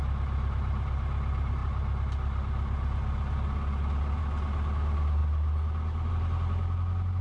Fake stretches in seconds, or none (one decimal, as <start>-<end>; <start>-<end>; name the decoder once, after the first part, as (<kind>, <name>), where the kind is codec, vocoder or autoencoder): none